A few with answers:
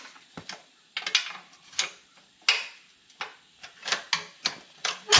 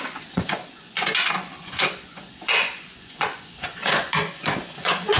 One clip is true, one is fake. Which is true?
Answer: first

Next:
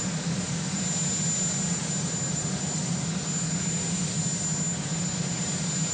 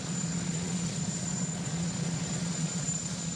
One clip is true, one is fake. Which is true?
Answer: first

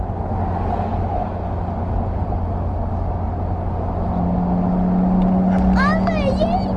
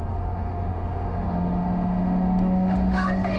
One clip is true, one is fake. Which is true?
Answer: first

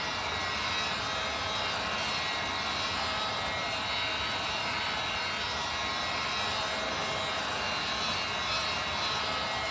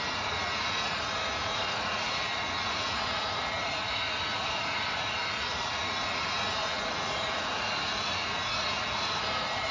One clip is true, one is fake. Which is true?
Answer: first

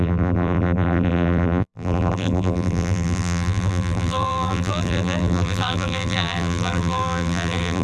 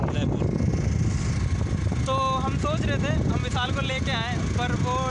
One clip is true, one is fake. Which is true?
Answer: second